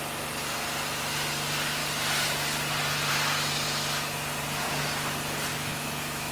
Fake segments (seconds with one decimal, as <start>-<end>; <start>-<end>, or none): 5.5-6.3